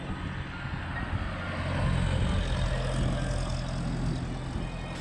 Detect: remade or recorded recorded